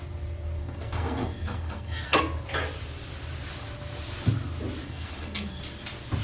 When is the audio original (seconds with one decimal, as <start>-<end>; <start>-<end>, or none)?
0.0-0.6; 2.2-4.8; 5.6-6.2